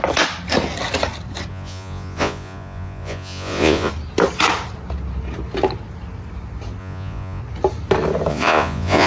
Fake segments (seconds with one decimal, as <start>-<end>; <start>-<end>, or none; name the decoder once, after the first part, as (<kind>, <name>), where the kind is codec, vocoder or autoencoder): 1.5-3.9 (vocoder, Vocos); 6.8-7.4; 8.3-9.1